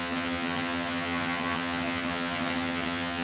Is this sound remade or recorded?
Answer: remade